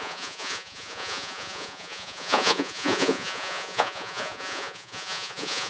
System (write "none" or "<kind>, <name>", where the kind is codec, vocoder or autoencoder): vocoder, Vocos